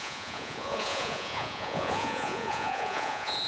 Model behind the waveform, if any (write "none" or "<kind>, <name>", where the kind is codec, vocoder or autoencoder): vocoder, Vocos